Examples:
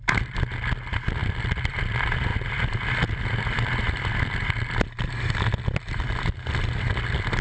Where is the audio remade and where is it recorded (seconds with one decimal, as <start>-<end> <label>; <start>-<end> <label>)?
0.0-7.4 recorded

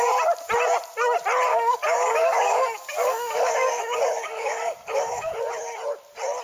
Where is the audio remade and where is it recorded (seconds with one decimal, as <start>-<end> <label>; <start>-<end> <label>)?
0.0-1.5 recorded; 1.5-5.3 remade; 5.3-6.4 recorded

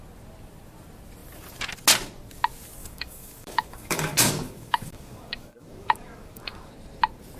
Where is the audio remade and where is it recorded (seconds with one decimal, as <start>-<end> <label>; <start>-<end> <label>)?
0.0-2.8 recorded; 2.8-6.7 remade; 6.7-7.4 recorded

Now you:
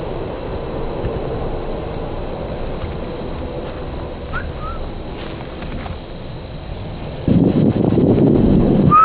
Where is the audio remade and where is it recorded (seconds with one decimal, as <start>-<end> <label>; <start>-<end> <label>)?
0.0-6.7 recorded; 6.7-7.3 remade; 7.3-9.0 recorded